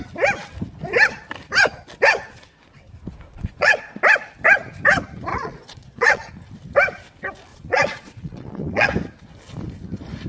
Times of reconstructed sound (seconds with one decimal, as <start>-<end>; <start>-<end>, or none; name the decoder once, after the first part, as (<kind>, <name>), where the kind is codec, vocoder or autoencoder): 3.3-4.0 (vocoder, Vocos); 5.3-6.3; 7.5-8.9